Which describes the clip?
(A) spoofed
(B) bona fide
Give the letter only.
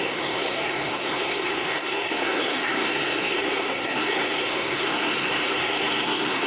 A